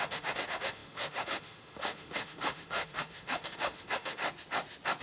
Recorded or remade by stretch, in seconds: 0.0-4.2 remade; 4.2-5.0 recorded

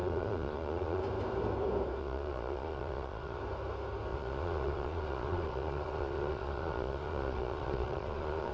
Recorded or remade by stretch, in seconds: 0.0-1.0 remade; 1.0-2.0 recorded; 2.0-3.4 remade; 3.4-4.1 recorded; 4.1-8.5 remade

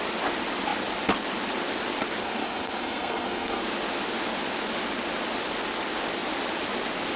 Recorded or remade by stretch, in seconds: 0.0-2.2 recorded; 2.2-3.6 remade; 3.6-7.2 recorded

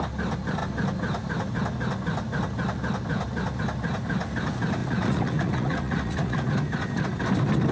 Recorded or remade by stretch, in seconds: 0.0-4.8 recorded; 4.8-6.5 remade; 6.5-7.7 recorded

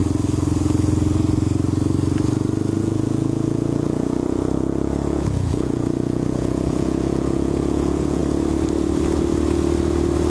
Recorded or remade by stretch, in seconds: 0.0-2.8 recorded; 2.8-8.2 remade; 8.2-10.3 recorded